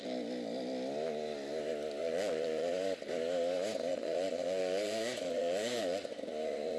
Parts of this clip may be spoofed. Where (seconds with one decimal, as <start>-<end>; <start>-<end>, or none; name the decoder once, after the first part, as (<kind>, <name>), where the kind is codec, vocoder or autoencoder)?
2.0-2.7 (vocoder, Vocos); 3.9-6.8